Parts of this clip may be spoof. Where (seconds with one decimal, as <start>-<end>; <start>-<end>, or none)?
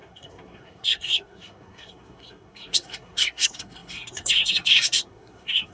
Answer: 0.0-5.7